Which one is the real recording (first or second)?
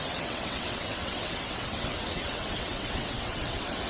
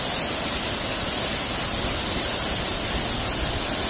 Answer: second